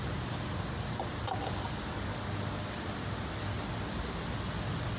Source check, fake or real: real